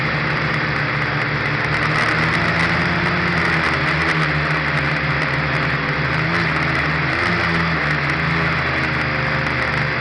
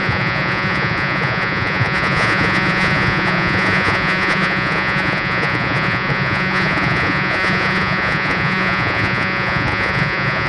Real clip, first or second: first